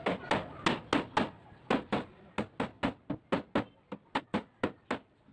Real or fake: real